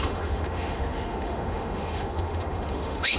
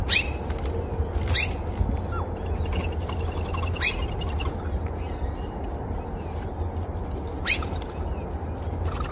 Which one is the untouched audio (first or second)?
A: second